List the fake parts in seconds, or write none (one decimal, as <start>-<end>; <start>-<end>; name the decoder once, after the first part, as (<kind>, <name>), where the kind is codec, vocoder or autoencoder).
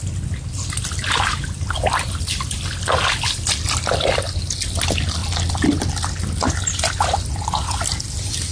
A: none